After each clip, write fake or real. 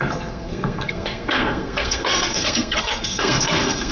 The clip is fake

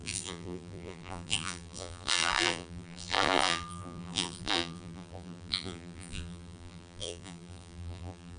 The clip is fake